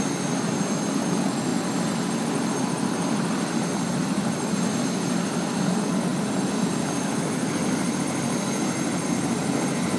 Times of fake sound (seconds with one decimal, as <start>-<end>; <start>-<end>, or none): none